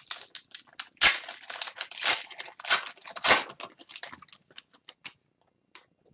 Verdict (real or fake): real